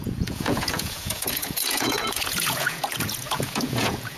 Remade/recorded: remade